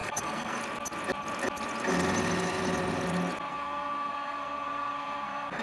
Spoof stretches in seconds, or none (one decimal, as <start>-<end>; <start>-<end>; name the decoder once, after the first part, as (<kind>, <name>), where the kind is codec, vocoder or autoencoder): 0.0-0.6 (codec, SNAC); 3.5-5.6

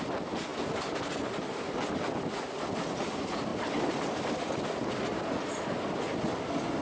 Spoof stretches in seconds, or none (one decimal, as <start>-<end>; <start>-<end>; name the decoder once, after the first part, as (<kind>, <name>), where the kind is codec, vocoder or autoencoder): none